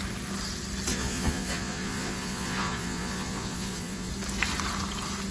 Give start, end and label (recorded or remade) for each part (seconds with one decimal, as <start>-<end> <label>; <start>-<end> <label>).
0.0-0.9 recorded; 0.9-4.1 remade; 4.1-5.3 recorded